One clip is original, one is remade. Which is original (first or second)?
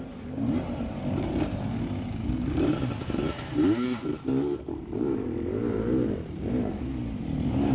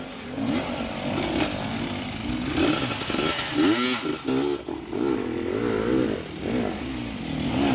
second